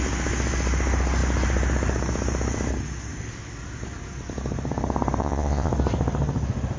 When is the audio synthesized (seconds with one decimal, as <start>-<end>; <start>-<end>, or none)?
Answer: 5.2-5.7